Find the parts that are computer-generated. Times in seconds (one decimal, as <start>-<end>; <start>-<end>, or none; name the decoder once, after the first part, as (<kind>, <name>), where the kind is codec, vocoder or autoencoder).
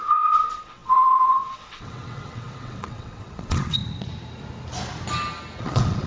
0.0-3.8 (vocoder, WaveNeXt); 5.6-6.1